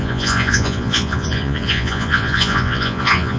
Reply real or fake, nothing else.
fake